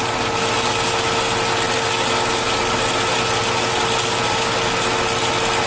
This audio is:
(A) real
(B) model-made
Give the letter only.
A